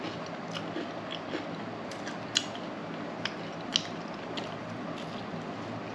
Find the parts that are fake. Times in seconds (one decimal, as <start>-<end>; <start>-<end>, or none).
none